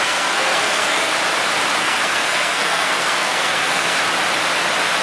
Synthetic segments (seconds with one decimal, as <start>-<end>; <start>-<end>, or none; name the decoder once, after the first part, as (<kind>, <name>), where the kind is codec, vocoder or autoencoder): 0.0-1.1 (codec, SNAC); 1.8-4.0